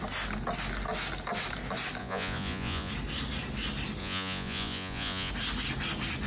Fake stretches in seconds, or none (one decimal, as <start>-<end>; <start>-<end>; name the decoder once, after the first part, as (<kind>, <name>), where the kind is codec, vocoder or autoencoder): 2.0-2.9 (vocoder, Vocos); 4.0-5.3